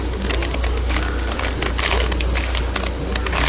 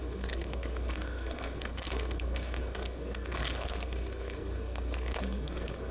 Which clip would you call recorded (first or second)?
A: first